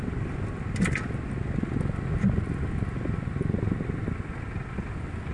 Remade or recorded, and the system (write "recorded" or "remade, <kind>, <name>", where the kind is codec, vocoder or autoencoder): recorded